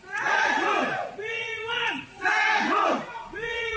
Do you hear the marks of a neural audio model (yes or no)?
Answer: yes